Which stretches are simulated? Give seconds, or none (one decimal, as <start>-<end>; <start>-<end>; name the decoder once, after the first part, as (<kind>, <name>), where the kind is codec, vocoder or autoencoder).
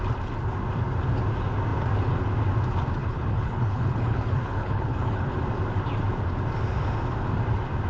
3.0-5.4 (codec, HILCodec)